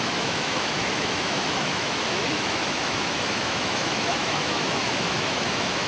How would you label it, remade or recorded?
remade